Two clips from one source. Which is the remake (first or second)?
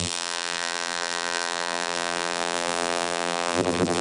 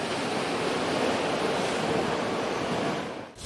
first